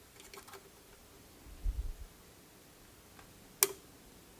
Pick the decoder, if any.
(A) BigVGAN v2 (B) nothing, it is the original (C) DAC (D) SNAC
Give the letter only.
B